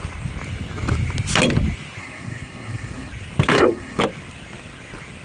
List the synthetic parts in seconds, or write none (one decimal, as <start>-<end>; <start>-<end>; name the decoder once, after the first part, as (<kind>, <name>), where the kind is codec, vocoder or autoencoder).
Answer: 2.0-3.1 (codec, SNAC); 3.5-4.0